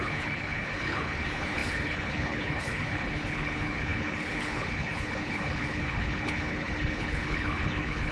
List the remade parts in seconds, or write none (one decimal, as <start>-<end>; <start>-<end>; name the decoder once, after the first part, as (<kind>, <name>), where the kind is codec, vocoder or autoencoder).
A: 0.0-8.1 (codec, HILCodec)